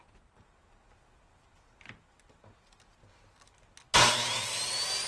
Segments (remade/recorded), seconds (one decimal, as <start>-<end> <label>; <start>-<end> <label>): 0.0-5.1 recorded